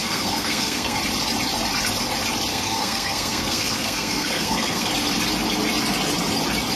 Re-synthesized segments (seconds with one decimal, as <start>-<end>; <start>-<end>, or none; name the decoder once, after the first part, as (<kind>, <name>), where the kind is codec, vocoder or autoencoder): 0.0-1.0 (codec, SNAC); 2.5-4.9